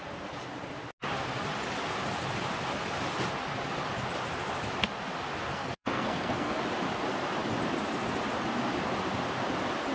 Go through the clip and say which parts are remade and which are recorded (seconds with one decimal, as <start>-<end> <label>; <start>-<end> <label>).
0.0-5.5 recorded; 5.5-6.6 remade; 6.6-9.9 recorded